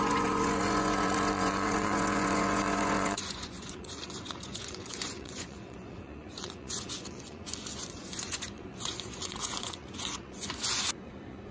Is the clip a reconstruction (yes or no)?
yes